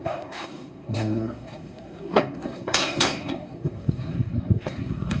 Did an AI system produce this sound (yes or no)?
yes